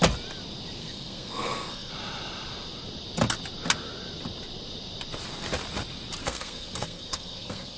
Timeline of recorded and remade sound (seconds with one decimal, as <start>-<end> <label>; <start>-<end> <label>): 0.0-0.8 recorded; 0.8-1.9 remade; 1.9-6.2 recorded; 6.2-7.8 remade